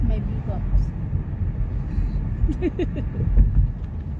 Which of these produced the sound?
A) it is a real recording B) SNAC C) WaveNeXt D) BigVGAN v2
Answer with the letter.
A